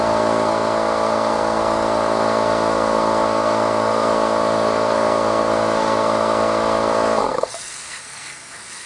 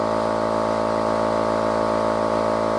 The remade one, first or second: first